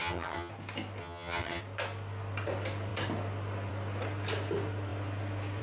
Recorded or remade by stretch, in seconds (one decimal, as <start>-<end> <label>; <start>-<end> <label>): 0.0-0.5 remade; 0.5-1.0 recorded; 1.0-1.6 remade; 1.6-5.6 recorded